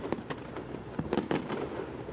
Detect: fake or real real